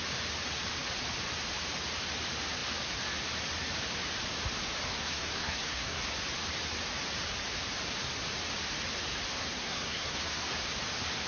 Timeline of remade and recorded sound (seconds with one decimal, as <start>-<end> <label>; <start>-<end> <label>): 0.0-4.9 recorded; 4.9-6.0 remade; 6.0-9.3 recorded; 9.3-10.4 remade; 10.4-11.3 recorded